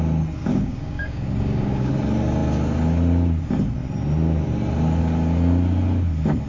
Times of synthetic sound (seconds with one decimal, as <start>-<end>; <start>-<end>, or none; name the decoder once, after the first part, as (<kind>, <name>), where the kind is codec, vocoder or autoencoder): 0.4-1.9 (codec, DAC)